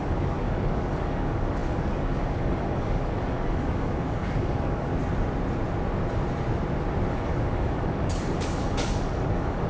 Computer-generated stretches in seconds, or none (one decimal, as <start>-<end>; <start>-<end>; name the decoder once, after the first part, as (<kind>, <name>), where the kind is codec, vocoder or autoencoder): 0.0-4.9 (codec, DAC); 7.1-9.7